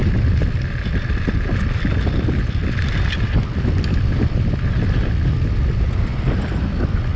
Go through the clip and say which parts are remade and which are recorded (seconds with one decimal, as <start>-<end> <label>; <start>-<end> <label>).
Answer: 0.0-7.2 recorded